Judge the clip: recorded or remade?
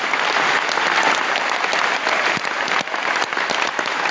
recorded